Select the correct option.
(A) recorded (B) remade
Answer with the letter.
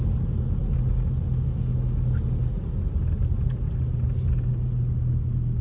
A